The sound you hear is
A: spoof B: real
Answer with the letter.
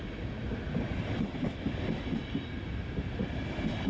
B